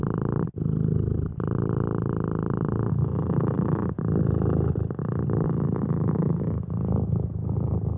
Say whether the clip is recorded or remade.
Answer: remade